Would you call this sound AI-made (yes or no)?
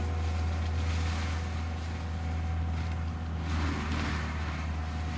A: no